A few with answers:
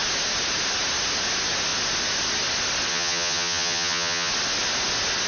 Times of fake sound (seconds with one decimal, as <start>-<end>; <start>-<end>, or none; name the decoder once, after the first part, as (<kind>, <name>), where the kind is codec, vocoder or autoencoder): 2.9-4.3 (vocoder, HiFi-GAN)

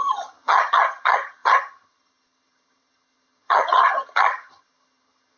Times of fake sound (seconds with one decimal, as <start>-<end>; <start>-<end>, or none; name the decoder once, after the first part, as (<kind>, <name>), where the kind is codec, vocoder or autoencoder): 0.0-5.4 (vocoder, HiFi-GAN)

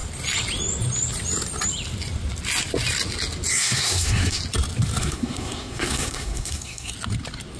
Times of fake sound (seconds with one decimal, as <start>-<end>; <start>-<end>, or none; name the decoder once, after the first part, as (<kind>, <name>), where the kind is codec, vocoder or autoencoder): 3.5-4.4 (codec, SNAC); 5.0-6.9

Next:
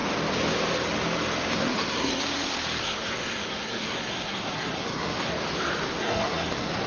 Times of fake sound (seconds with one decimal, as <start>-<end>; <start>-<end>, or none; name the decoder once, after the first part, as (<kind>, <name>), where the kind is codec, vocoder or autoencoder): 1.5-2.2 (codec, SNAC); 2.8-5.3; 6.0-6.9